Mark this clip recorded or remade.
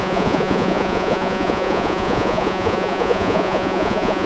remade